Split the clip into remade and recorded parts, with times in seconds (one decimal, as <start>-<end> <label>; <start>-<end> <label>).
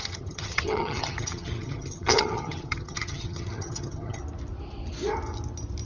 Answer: 0.0-4.2 remade; 4.2-5.9 recorded